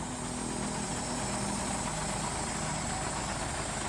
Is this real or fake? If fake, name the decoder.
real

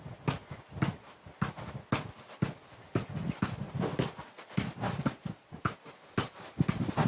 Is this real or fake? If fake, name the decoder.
real